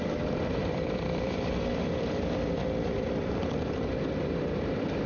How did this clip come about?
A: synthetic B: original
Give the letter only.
A